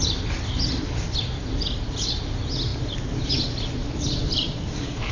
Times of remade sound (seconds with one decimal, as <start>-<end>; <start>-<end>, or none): 3.8-5.1